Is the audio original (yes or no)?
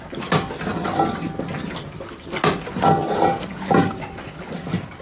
yes